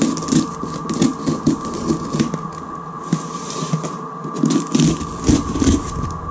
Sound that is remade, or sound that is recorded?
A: recorded